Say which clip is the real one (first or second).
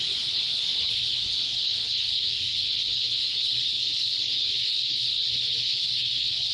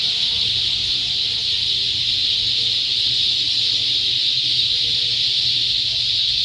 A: second